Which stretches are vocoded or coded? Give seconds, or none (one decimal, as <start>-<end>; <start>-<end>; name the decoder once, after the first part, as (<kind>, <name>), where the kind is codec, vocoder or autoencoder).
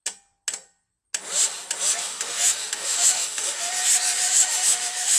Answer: 2.1-3.7 (autoencoder, DAC-VAE); 4.2-5.2